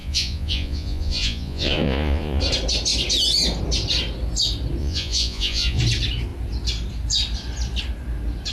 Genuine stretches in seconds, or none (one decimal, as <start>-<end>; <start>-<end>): 2.4-4.8; 5.8-8.5